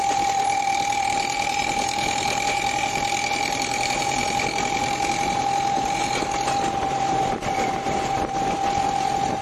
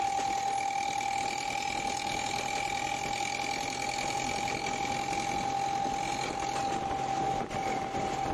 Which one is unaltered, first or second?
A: second